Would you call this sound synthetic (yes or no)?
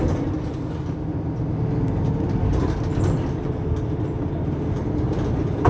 no